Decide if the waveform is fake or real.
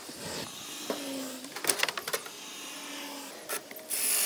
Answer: real